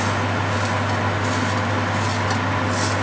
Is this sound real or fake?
real